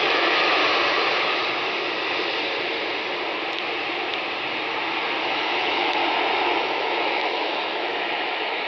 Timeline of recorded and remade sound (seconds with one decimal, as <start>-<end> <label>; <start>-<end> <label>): 0.0-0.6 remade; 0.6-5.3 recorded; 5.3-6.0 remade; 6.0-6.6 recorded; 6.6-8.7 remade